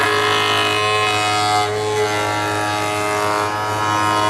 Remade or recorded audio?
recorded